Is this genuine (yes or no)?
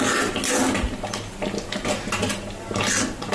yes